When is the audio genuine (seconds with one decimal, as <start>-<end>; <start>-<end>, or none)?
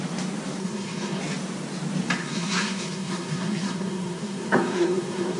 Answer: 0.0-0.6; 1.2-2.2